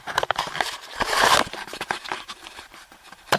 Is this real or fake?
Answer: fake